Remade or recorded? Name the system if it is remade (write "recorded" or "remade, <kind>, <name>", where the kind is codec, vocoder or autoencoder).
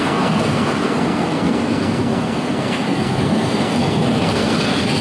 remade, codec, SNAC